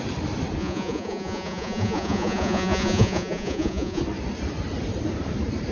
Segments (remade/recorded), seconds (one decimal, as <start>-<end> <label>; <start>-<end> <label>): 0.0-0.6 recorded; 0.6-4.0 remade; 4.0-5.7 recorded